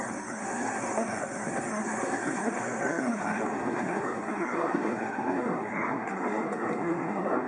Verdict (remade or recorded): remade